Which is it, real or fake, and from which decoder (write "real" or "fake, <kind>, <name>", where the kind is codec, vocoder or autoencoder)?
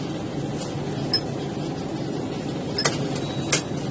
real